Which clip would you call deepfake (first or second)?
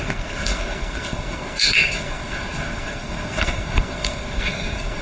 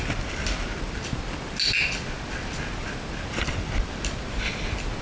first